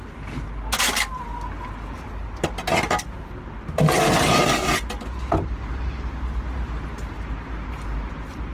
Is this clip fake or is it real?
real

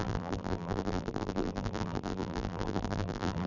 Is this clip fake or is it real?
fake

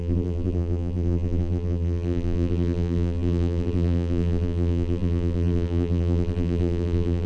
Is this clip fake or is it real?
fake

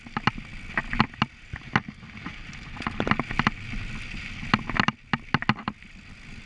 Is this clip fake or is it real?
real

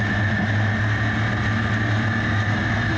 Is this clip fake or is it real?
real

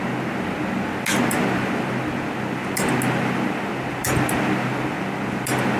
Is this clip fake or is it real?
real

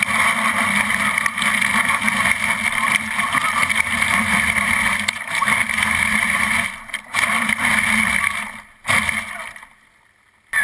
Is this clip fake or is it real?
real